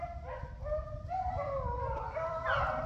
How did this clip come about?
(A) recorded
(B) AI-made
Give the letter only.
A